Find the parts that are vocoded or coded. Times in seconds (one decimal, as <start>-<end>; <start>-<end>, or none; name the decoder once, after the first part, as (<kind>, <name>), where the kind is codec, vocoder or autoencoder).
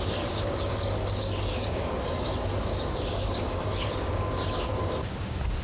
0.0-5.6 (codec, DAC)